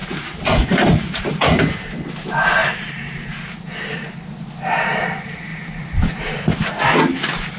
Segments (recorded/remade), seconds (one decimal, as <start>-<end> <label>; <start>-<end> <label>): 0.0-1.6 remade; 1.6-2.6 recorded; 2.6-4.4 remade; 4.4-5.5 recorded; 5.5-7.0 remade; 7.0-7.6 recorded

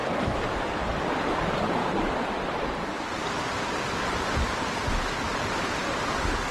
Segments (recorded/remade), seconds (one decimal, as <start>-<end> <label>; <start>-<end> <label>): 0.0-0.6 remade; 0.6-1.8 recorded; 1.8-5.7 remade; 5.7-6.5 recorded